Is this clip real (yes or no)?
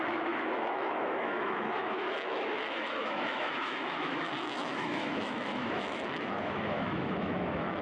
no